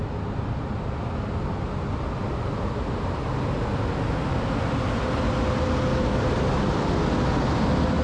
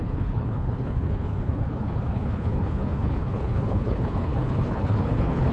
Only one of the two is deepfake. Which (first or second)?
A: second